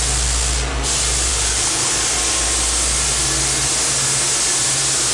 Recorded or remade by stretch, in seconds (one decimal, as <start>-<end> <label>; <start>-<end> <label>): 0.0-1.3 recorded; 1.3-1.9 remade; 1.9-5.1 recorded